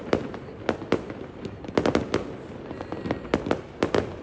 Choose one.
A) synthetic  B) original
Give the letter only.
B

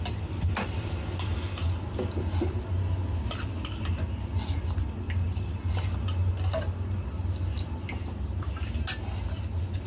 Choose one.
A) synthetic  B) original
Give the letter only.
B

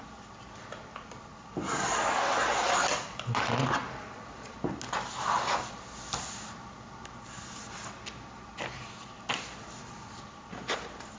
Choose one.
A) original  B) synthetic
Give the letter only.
A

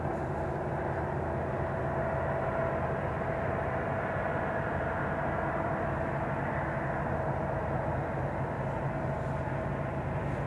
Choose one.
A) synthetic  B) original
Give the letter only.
B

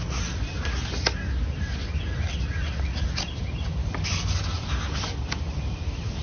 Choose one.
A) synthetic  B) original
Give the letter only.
B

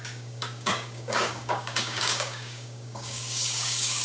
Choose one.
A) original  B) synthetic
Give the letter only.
B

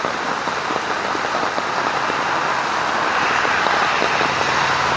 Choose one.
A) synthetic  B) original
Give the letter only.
B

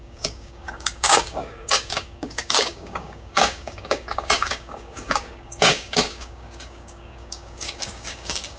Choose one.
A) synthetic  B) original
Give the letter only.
A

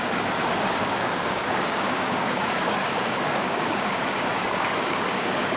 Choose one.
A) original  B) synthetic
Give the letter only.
B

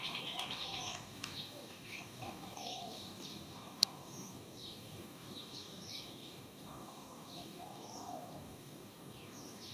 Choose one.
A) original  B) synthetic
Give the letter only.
B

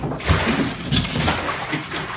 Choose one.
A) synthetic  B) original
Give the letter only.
B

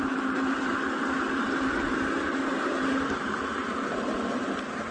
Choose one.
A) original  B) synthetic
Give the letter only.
A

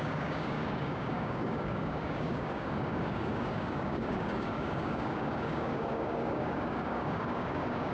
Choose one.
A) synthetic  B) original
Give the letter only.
A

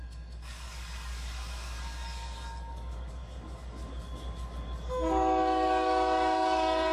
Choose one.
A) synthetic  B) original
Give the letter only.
A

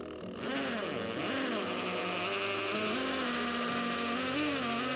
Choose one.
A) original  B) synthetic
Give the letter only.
A